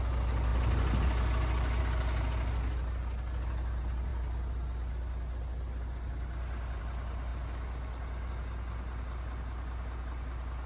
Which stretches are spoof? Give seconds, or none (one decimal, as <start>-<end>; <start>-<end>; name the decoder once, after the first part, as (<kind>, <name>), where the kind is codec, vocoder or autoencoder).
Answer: none